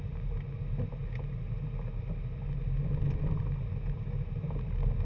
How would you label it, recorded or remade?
recorded